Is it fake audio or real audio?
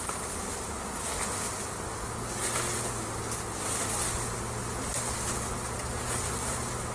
real